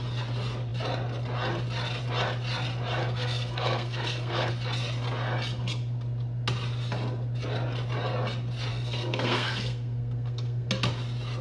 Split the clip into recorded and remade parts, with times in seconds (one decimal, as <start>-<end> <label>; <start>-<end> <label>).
0.0-3.0 recorded; 3.0-4.5 remade; 4.5-8.7 recorded; 8.7-10.7 remade; 10.7-11.4 recorded